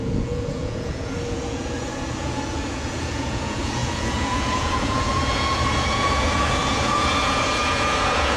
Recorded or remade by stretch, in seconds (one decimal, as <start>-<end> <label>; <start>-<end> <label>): 0.0-8.4 remade